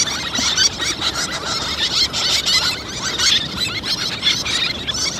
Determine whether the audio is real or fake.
real